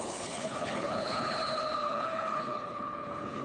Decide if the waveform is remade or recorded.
remade